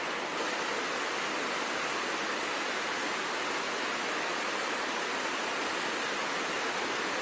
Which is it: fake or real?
real